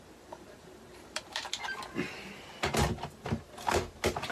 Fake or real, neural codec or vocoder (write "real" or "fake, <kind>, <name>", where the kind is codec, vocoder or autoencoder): fake, vocoder, BigVGAN v2